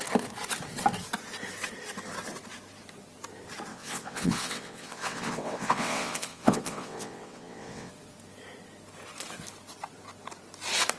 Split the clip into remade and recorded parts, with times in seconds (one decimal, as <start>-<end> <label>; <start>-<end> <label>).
0.0-3.7 recorded; 3.7-7.9 remade; 7.9-11.0 recorded